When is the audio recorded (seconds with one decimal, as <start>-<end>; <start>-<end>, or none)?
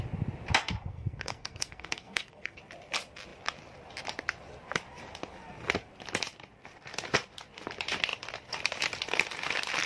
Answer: 0.0-0.6; 2.6-9.9